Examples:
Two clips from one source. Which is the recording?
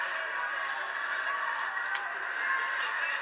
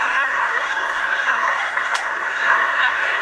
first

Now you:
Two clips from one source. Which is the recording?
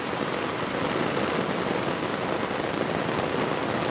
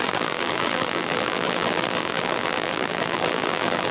first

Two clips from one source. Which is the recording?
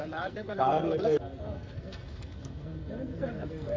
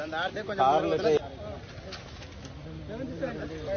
second